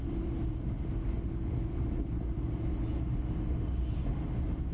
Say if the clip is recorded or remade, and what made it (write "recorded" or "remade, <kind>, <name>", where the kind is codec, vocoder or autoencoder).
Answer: recorded